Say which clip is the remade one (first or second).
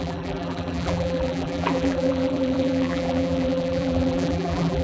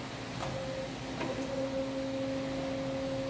first